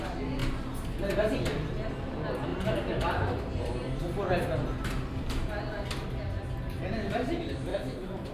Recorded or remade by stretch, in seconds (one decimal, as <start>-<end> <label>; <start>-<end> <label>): 0.0-2.5 recorded; 2.5-3.7 remade; 3.7-7.7 recorded; 7.7-8.3 remade